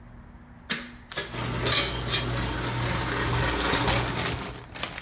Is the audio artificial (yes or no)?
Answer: no